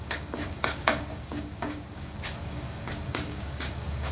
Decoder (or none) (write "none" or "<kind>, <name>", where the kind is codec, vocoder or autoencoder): codec, DAC